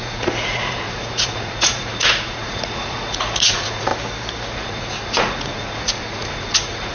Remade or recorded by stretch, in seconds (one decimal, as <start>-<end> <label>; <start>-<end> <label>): 0.0-3.9 remade; 3.9-4.5 recorded; 4.5-6.9 remade